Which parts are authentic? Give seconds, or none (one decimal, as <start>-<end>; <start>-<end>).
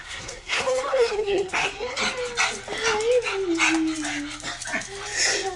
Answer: 2.0-5.6